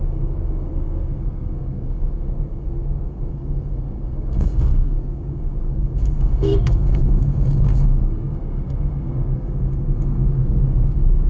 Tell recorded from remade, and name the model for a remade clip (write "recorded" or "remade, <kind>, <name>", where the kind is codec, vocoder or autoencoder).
remade, codec, SNAC